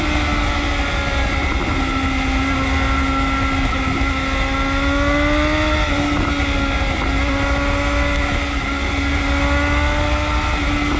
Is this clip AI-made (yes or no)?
no